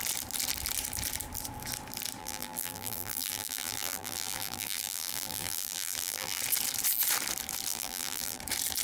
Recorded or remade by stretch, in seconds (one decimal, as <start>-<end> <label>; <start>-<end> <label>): 0.0-2.2 recorded; 2.2-6.4 remade; 6.4-7.7 recorded; 7.7-8.4 remade; 8.4-8.8 recorded